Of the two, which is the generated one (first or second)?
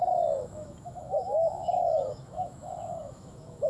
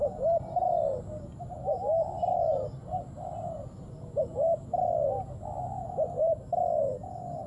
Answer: first